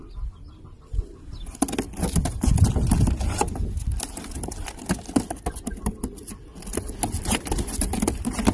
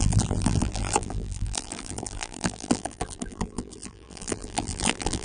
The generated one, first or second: second